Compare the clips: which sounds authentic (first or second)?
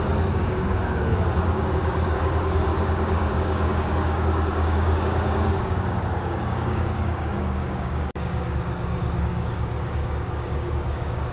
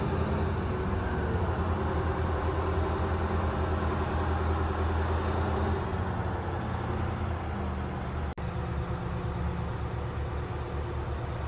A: second